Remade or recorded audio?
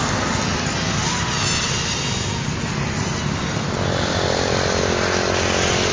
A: recorded